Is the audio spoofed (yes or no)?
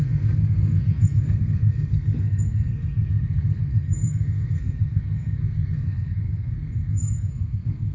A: yes